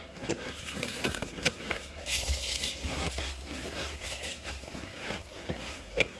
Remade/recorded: remade